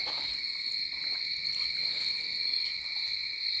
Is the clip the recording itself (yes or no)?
yes